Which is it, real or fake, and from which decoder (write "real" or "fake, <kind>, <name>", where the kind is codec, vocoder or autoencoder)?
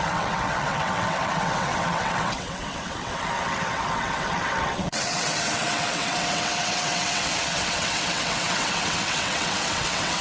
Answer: fake, vocoder, WaveNeXt